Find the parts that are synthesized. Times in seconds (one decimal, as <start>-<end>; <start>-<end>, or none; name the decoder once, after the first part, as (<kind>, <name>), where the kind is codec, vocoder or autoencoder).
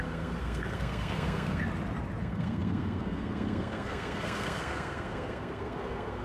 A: 0.0-1.6 (codec, SNAC); 2.2-6.2